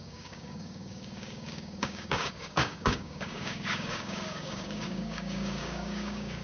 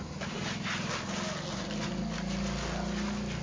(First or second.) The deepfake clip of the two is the first